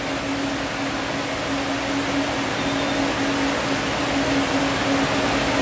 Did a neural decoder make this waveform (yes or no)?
no